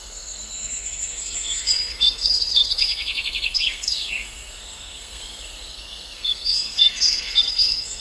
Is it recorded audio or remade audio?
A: remade